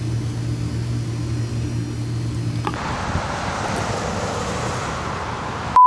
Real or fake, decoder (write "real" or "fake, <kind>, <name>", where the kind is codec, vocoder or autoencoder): real